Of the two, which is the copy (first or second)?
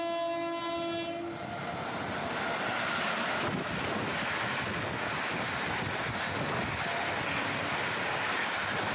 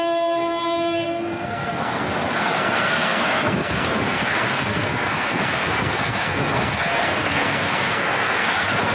second